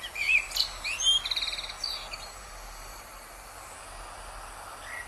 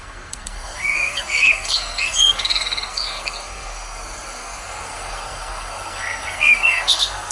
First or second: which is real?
first